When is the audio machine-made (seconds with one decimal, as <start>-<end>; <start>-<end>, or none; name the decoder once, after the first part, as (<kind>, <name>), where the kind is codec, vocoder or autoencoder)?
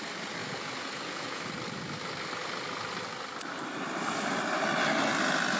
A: 0.4-1.4 (vocoder, Vocos)